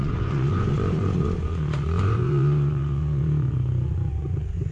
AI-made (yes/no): yes